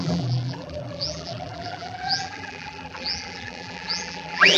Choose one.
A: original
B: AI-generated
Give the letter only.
B